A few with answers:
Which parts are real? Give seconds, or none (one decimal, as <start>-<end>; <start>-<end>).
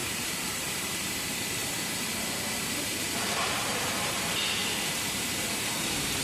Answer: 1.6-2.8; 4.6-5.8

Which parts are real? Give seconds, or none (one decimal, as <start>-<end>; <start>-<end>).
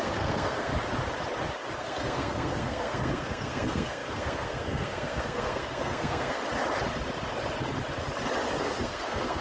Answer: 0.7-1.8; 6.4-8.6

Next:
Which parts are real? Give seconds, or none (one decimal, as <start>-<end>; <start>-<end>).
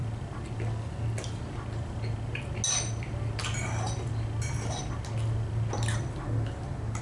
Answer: 0.0-7.0